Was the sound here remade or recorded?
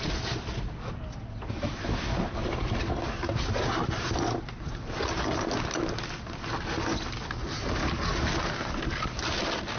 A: recorded